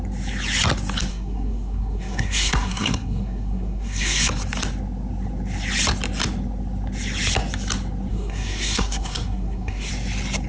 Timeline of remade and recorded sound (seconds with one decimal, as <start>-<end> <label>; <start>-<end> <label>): 0.0-1.1 recorded; 1.1-4.3 remade; 4.3-8.1 recorded; 8.1-9.9 remade; 9.9-10.5 recorded